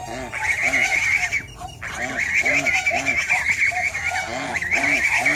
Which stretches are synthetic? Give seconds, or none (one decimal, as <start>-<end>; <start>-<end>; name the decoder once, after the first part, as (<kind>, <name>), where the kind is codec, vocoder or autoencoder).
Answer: 4.3-5.4 (vocoder, BigVGAN v2)